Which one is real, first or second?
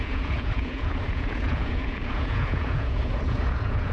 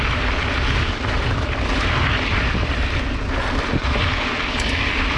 second